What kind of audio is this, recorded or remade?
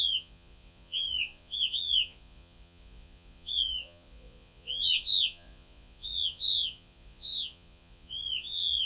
remade